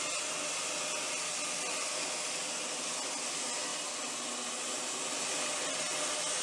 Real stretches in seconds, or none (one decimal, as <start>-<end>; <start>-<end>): 0.0-6.4